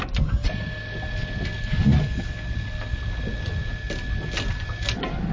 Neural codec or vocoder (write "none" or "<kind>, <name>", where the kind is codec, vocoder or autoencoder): none